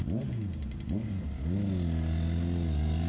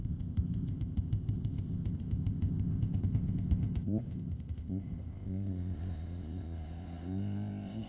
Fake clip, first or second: second